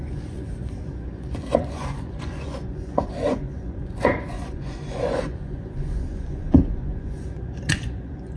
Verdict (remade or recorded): remade